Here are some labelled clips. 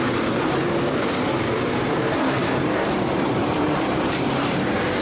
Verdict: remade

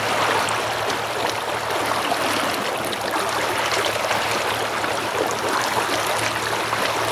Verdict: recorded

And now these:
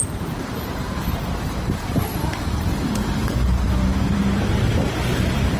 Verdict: remade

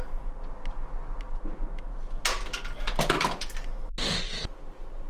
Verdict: recorded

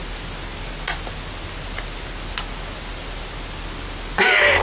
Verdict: recorded